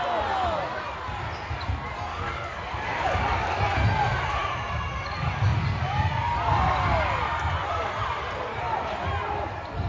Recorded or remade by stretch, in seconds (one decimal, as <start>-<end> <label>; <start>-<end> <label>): 0.0-2.1 recorded; 2.1-3.6 remade; 3.6-9.9 recorded